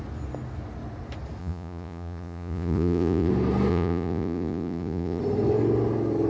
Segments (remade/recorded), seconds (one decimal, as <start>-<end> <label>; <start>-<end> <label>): 0.0-1.4 recorded; 1.4-3.3 remade; 3.3-3.7 recorded; 3.7-5.2 remade; 5.2-6.3 recorded